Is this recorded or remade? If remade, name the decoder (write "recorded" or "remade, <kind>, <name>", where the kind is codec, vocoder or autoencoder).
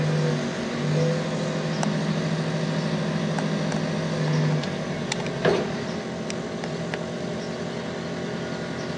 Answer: recorded